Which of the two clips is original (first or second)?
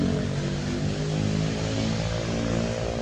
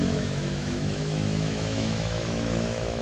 first